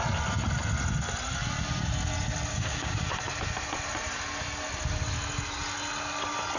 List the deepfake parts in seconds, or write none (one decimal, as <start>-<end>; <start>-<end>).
2.5-3.0